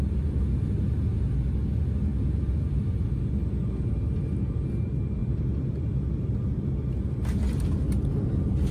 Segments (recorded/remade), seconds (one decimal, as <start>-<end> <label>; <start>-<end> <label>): 0.0-8.7 recorded